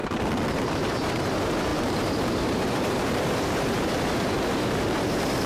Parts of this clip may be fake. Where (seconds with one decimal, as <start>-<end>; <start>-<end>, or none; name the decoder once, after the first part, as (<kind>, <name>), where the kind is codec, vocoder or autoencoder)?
0.5-5.5 (vocoder, BigVGAN v2)